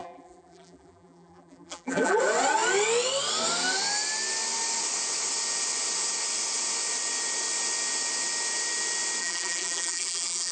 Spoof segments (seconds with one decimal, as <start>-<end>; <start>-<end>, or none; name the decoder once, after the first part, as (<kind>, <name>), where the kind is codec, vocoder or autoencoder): 0.0-2.2 (vocoder, BigVGAN v2); 9.2-10.5